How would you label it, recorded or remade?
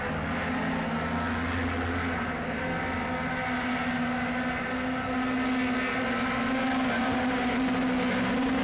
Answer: recorded